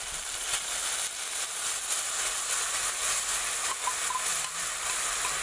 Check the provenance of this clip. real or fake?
real